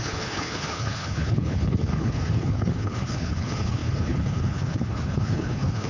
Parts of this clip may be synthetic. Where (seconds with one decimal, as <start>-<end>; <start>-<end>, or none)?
0.0-5.9

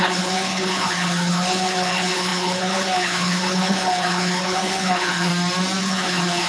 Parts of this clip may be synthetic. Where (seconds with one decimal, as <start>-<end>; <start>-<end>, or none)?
0.0-5.3; 5.8-6.5

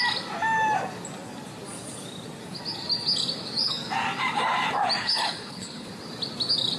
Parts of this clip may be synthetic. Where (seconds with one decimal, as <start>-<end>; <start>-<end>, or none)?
5.0-5.9